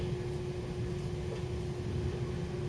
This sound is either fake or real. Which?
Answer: real